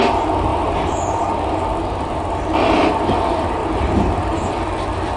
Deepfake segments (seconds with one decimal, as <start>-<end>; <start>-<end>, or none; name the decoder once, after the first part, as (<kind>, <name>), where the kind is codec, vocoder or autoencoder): 0.5-1.1 (vocoder, BigVGAN v2); 1.7-2.8; 3.6-4.1